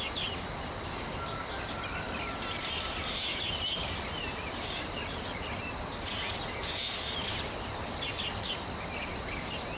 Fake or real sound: real